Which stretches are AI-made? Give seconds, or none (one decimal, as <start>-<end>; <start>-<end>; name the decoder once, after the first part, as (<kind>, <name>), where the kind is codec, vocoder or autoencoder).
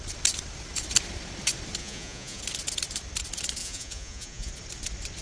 1.8-2.4 (vocoder, Vocos); 3.6-4.5